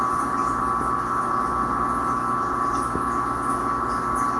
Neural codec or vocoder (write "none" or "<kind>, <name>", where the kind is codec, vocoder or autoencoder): none